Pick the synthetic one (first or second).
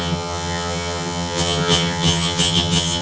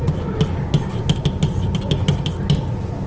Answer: first